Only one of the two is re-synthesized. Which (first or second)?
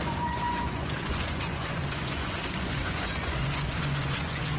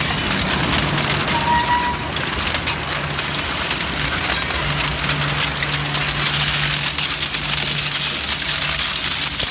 first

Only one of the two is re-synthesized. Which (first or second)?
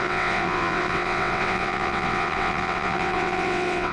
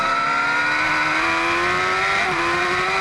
first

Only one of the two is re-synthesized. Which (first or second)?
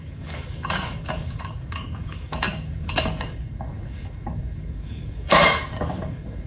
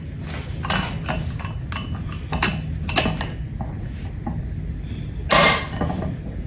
first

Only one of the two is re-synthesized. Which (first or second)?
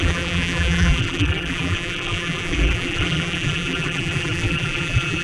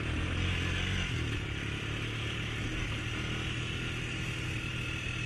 first